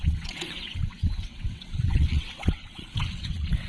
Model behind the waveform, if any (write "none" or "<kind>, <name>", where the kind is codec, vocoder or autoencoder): vocoder, WaveNeXt